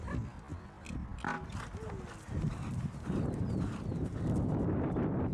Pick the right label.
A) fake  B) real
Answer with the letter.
B